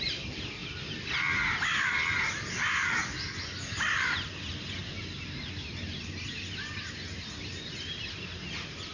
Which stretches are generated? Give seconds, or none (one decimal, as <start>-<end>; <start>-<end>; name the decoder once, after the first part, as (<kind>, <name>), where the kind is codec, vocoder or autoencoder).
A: 0.0-4.8 (vocoder, BigVGAN v2); 5.5-8.9